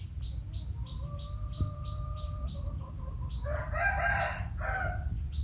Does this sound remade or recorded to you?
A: recorded